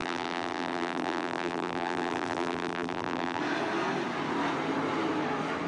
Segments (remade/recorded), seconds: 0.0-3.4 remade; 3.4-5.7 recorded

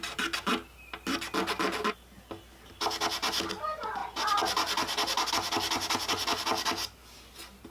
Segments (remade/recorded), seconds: 0.0-7.7 recorded

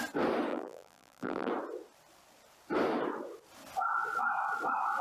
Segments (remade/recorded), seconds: 0.0-0.5 recorded; 0.5-1.5 remade; 1.5-5.0 recorded